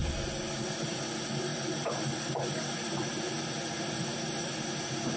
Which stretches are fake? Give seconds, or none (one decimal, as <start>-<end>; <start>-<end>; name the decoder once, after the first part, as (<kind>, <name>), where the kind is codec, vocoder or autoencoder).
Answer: 1.5-4.6 (vocoder, BigVGAN v2)